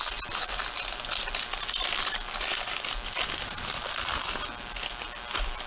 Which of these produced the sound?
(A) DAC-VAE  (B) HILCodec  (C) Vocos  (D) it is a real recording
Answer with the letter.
D